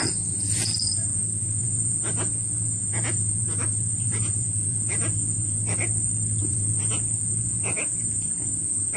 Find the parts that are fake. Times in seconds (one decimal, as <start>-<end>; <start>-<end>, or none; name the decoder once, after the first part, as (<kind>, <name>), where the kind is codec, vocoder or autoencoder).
0.0-5.6 (vocoder, Vocos); 6.4-9.0